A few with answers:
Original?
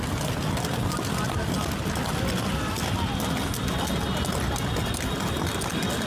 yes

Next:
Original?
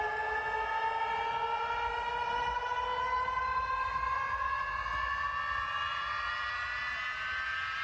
yes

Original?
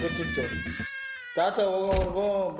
yes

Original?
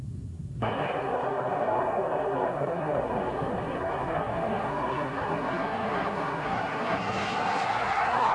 no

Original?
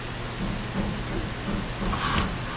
yes